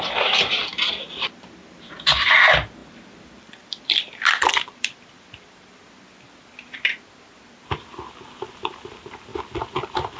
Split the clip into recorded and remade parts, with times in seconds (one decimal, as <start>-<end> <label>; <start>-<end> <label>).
0.0-0.7 recorded; 0.7-1.9 remade; 1.9-2.8 recorded; 2.8-6.7 remade; 6.7-9.3 recorded; 9.3-10.2 remade